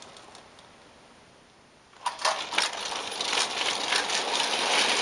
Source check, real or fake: real